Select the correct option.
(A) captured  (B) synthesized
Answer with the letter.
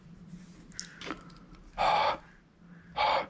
A